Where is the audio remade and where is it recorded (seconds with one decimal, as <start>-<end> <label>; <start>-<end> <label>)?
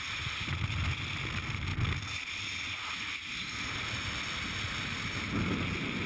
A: 0.0-6.1 recorded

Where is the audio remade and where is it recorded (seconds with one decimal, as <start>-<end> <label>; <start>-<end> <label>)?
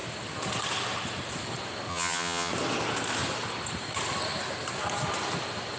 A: 0.0-1.9 recorded; 1.9-2.5 remade; 2.5-5.8 recorded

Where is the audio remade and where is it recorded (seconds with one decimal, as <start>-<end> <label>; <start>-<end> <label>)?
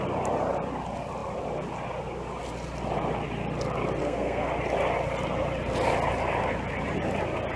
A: 0.0-4.0 recorded; 4.0-4.5 remade; 4.5-7.6 recorded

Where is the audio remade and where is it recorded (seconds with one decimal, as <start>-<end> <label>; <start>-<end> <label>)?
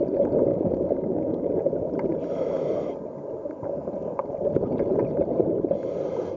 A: 0.0-0.5 recorded; 0.5-1.5 remade; 1.5-6.4 recorded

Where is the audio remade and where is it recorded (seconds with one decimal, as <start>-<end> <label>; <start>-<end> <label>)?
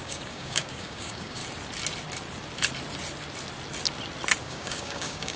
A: 0.0-1.4 remade; 1.4-4.4 recorded; 4.4-5.4 remade